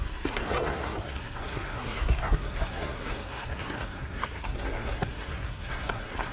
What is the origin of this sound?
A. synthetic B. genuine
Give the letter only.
A